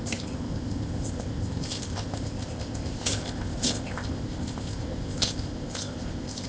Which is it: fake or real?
fake